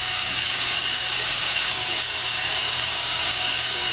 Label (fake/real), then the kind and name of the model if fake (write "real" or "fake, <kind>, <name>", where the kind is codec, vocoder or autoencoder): fake, codec, DAC